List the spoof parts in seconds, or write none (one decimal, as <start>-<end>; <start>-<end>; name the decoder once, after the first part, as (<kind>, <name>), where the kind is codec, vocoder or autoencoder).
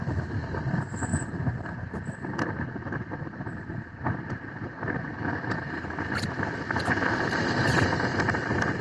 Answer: 0.0-0.6 (autoencoder, DAC-VAE)